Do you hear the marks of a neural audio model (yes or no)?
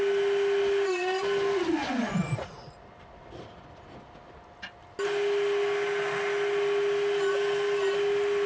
no